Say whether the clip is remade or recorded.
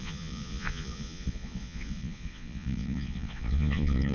remade